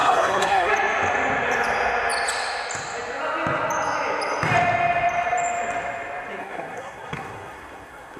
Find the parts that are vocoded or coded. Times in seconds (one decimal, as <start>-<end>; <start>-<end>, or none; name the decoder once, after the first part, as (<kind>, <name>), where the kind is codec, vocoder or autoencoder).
0.0-0.7 (codec, SNAC); 6.4-8.2